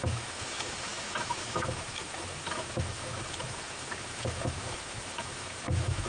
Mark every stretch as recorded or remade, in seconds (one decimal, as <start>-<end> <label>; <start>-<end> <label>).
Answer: 0.0-6.1 remade